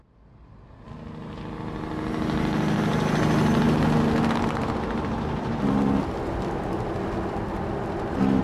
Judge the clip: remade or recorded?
recorded